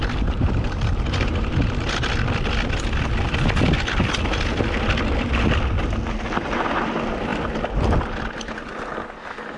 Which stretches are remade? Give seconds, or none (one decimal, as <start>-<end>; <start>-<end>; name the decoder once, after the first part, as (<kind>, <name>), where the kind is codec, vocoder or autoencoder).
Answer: 0.0-1.5 (vocoder, BigVGAN v2)